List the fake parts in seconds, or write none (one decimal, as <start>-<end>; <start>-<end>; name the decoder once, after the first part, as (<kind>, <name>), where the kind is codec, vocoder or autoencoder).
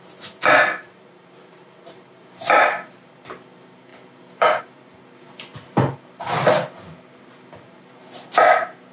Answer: none